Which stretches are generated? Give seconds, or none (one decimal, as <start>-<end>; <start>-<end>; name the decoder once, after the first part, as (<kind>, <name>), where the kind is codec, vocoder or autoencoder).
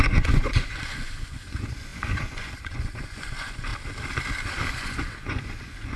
0.0-3.7 (vocoder, Vocos); 4.7-6.0